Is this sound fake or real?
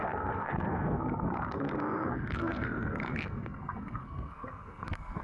fake